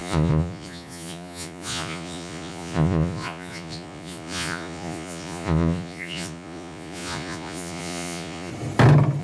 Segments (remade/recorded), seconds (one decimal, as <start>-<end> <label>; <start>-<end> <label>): 0.0-8.5 remade; 8.5-9.2 recorded